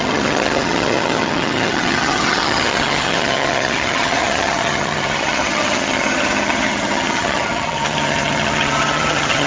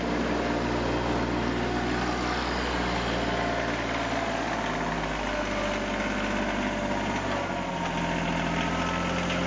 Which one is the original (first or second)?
second